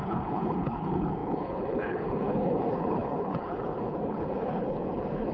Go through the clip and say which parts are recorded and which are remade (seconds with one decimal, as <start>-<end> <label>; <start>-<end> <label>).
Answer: 0.0-5.3 remade